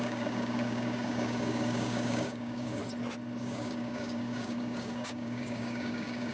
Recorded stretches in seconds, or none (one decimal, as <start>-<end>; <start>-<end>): 2.8-3.4

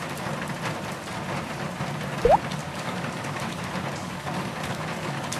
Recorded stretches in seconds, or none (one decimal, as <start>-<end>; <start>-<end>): 0.0-2.6; 3.6-4.0

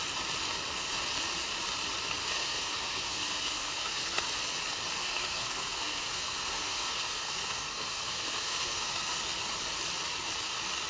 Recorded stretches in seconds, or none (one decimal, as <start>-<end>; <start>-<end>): 0.0-2.2; 4.2-5.0; 9.2-10.9

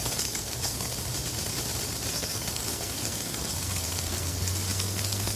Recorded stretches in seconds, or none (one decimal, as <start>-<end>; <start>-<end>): 0.9-2.1